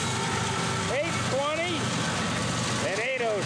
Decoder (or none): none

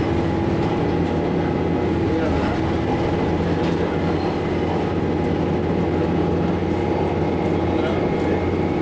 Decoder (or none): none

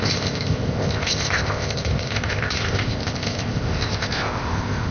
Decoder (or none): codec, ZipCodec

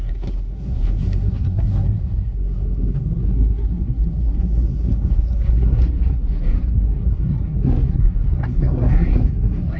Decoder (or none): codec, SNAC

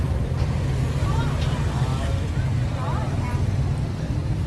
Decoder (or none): none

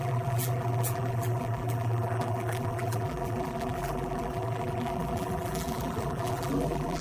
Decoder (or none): vocoder, BigVGAN v2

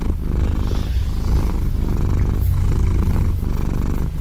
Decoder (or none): none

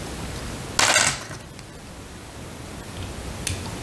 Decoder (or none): none